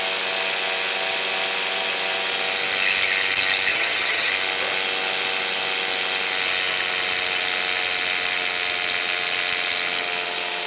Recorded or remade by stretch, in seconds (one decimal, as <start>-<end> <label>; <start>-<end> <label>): 0.0-3.7 recorded; 3.7-4.3 remade; 4.3-10.7 recorded